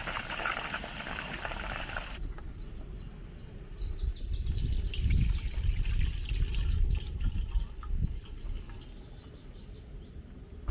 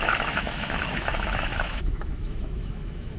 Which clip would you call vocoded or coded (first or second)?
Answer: second